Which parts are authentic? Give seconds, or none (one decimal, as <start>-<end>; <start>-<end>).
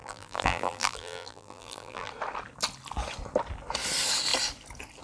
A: 2.1-5.0